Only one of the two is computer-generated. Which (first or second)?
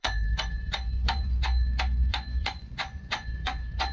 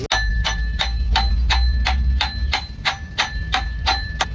first